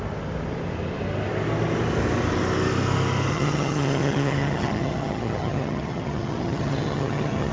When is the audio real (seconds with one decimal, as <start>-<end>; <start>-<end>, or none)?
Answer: 0.0-3.3